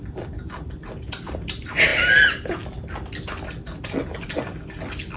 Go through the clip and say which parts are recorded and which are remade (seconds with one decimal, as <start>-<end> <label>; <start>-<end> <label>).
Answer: 0.0-5.2 recorded